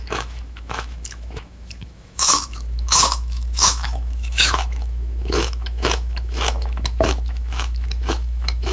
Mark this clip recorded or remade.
remade